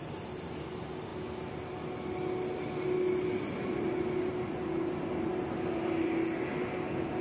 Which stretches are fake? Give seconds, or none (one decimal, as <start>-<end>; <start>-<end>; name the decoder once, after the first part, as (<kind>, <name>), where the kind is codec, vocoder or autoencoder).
none